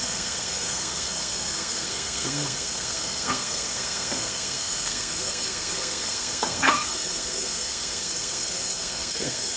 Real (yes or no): no